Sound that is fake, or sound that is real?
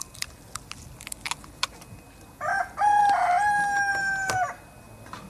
real